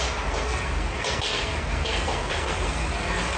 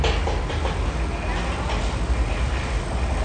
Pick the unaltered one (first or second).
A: second